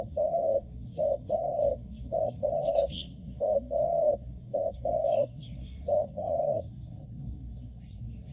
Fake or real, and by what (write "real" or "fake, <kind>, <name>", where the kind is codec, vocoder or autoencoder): fake, codec, SNAC